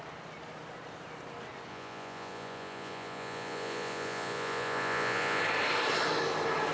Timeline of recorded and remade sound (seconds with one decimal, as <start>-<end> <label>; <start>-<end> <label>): 0.0-1.7 recorded; 1.7-5.4 remade; 5.4-6.7 recorded